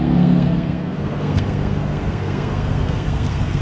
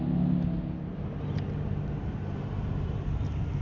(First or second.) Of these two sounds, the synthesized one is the first